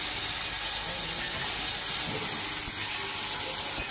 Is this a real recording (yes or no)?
yes